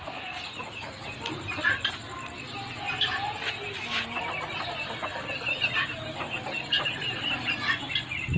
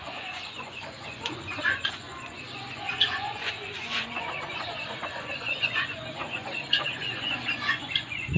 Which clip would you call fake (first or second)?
second